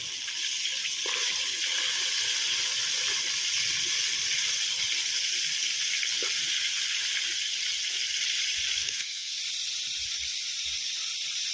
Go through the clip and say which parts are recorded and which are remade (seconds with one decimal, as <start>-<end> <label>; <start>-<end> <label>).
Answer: 0.0-8.8 recorded; 8.8-9.4 remade; 9.4-11.5 recorded